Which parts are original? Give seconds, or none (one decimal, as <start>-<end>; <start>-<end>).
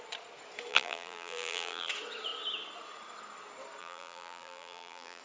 0.0-0.7; 1.9-3.8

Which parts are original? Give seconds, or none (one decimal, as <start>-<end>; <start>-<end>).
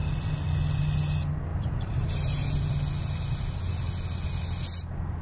0.0-1.5; 2.7-5.2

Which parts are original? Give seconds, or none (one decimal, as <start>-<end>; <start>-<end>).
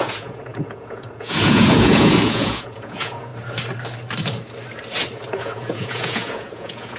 3.3-5.3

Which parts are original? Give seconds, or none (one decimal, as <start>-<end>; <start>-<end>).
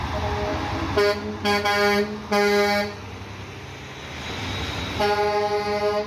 0.0-6.1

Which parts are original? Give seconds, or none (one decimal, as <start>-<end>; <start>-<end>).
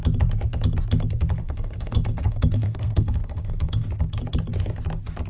0.0-1.4; 3.9-5.3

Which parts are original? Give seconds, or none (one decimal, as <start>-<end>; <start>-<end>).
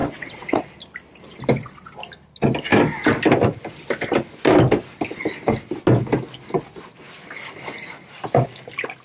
0.6-9.0